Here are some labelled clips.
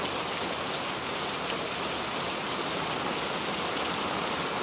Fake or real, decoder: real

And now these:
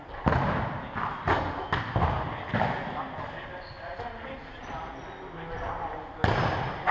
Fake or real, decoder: real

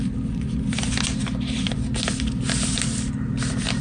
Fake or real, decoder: real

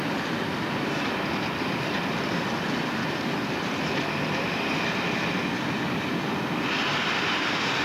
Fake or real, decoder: real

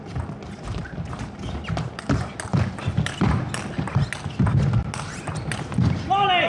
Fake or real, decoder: real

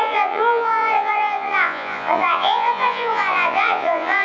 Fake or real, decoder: fake, vocoder, Vocos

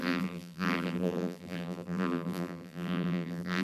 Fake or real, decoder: fake, vocoder, BigVGAN v2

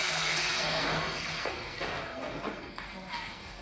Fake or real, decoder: fake, codec, SNAC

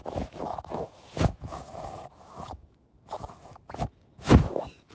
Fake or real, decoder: fake, autoencoder, DAC-VAE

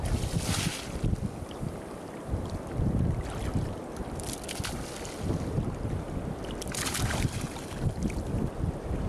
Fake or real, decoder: real